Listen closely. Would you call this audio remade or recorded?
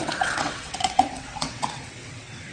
remade